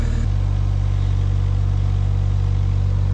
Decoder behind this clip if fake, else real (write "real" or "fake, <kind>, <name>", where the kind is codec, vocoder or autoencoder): real